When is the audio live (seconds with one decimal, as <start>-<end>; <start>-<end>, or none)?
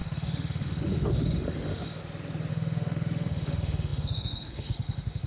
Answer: 2.0-2.5